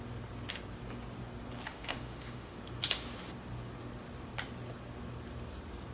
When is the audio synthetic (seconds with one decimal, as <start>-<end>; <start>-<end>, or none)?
1.7-2.6